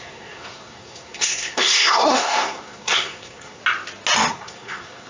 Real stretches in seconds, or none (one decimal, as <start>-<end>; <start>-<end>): 3.6-4.3